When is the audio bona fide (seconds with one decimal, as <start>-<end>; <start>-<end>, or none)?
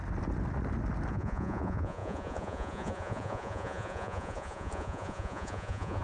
0.0-1.1